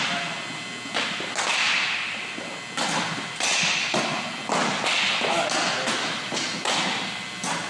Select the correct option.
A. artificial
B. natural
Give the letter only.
B